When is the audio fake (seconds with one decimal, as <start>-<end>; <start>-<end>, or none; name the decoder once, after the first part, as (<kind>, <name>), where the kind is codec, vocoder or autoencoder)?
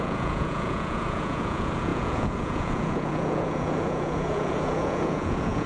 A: 0.0-5.7 (vocoder, Vocos)